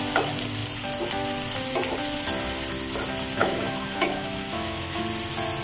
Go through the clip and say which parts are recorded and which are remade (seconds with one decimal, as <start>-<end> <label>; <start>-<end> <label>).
0.0-3.4 recorded; 3.4-5.0 remade; 5.0-5.6 recorded